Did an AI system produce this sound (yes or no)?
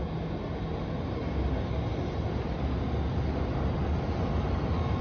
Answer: no